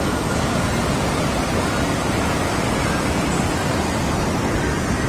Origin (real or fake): real